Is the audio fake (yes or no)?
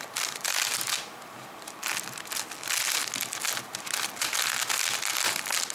no